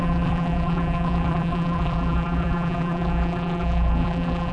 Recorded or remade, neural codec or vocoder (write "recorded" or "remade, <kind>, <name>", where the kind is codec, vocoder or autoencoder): remade, vocoder, BigVGAN v2